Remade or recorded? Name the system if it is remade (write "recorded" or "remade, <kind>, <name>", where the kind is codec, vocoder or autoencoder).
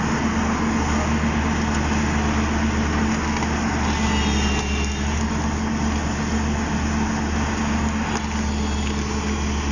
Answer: recorded